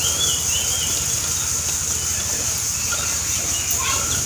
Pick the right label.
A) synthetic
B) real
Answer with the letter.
B